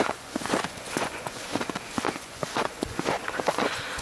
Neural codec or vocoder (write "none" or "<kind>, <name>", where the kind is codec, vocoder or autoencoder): vocoder, Vocos